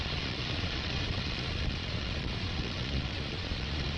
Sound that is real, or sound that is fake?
fake